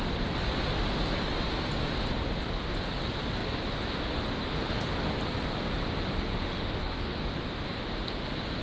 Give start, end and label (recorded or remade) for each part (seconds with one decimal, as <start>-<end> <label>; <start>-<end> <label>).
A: 0.0-4.4 recorded; 4.4-4.9 remade; 4.9-6.3 recorded; 6.3-7.2 remade; 7.2-8.6 recorded